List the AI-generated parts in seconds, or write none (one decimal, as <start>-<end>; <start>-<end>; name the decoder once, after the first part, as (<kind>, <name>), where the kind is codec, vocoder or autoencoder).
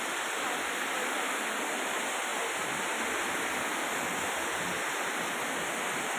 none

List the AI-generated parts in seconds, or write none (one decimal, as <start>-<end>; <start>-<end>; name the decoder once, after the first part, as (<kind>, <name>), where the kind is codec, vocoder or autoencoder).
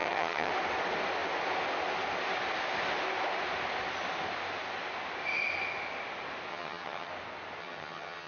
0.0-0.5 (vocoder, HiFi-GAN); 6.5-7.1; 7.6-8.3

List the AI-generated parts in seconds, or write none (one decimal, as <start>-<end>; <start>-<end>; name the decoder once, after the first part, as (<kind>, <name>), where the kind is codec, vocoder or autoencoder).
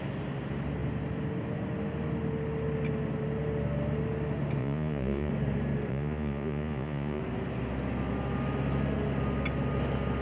4.6-5.3 (vocoder, Vocos); 5.9-7.2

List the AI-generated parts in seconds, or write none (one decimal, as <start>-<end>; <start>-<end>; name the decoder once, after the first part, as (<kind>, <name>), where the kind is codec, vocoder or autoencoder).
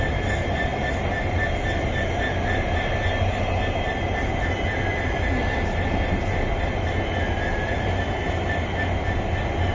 none